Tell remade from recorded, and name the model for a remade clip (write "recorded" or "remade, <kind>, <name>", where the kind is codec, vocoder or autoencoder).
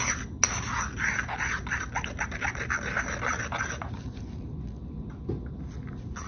recorded